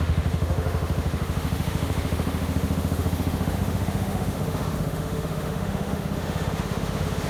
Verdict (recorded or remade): remade